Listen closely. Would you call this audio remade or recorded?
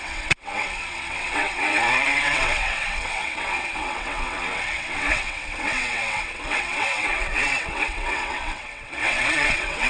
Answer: remade